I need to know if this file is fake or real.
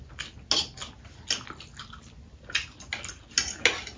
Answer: real